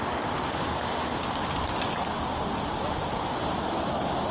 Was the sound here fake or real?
real